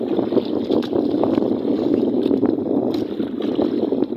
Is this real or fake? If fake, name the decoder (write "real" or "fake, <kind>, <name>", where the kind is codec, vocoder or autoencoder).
real